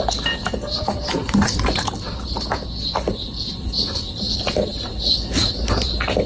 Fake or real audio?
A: real